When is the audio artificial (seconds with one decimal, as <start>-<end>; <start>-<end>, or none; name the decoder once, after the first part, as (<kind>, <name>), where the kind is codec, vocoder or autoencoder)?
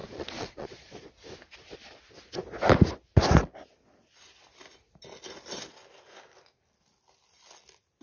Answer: 0.0-1.0 (vocoder, Vocos)